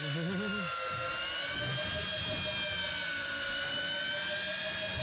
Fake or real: real